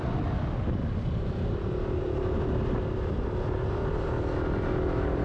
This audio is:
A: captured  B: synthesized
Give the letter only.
A